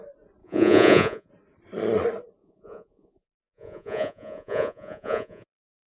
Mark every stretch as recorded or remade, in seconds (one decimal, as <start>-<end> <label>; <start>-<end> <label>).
0.0-0.4 recorded; 0.4-1.3 remade; 1.3-2.4 recorded; 2.4-5.9 remade